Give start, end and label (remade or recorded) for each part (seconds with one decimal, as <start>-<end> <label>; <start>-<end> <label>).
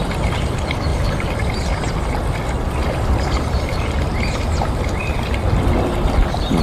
0.0-0.9 recorded; 0.9-1.9 remade; 1.9-2.8 recorded; 2.8-5.3 remade; 5.3-6.6 recorded